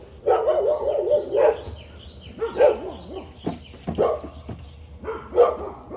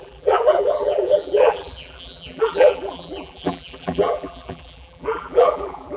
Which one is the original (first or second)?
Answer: first